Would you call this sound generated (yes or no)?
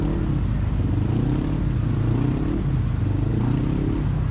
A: no